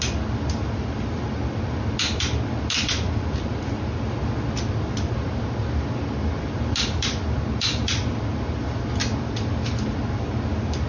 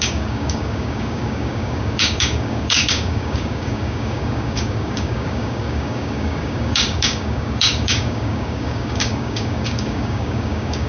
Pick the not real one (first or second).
second